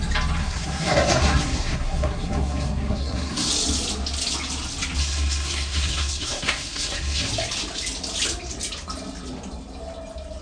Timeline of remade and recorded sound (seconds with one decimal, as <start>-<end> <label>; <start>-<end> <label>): 0.0-0.4 recorded; 0.4-3.5 remade; 3.5-5.0 recorded; 5.0-7.3 remade; 7.3-10.4 recorded